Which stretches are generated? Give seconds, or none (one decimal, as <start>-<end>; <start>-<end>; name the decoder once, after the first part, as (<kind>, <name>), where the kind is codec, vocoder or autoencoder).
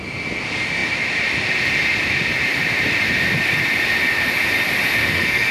5.0-5.5 (codec, SNAC)